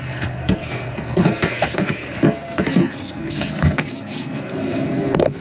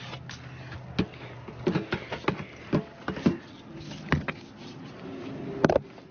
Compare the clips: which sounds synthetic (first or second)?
first